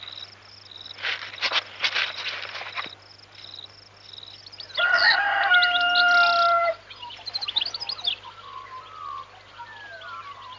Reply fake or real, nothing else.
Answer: real